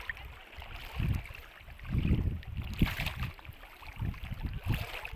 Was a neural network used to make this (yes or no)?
no